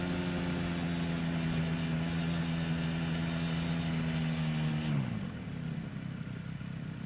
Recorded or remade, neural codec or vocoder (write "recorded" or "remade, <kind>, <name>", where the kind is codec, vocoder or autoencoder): recorded